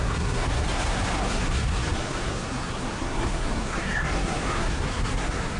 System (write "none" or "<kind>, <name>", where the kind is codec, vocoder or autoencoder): codec, SNAC